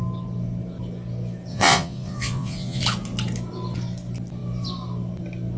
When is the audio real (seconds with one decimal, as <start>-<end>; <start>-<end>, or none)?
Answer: 0.0-1.5; 2.8-5.6